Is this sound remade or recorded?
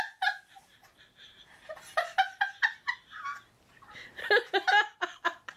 recorded